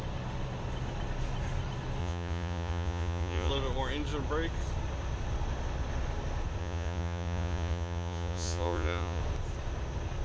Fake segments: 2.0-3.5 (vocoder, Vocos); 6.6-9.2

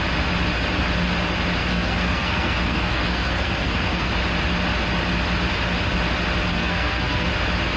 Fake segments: 1.6-4.1 (codec, SNAC); 6.5-7.3

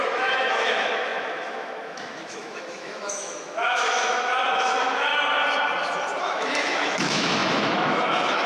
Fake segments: 0.0-5.1 (autoencoder, DAC-VAE); 6.2-8.5

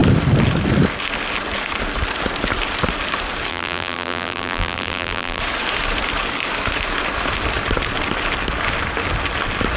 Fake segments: 3.5-5.4 (vocoder, BigVGAN v2)

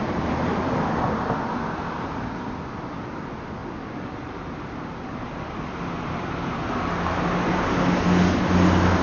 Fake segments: none

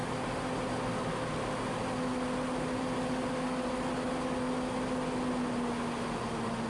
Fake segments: none

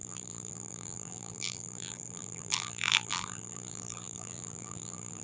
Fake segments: 0.0-5.2 (vocoder, BigVGAN v2)

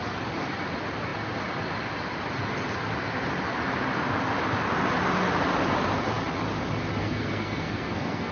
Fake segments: 7.0-8.3 (codec, SNAC)